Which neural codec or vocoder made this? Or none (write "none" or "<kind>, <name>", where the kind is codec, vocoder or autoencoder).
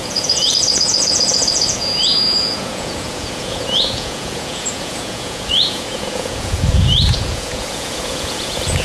vocoder, Vocos